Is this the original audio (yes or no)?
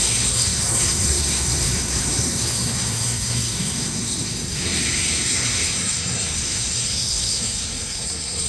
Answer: no